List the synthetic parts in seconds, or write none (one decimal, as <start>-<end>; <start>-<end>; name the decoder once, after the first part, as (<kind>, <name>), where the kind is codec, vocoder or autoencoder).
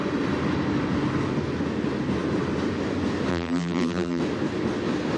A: 3.3-4.2 (vocoder, BigVGAN v2)